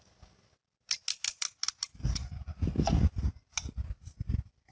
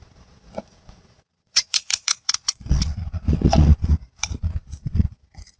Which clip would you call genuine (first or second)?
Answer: first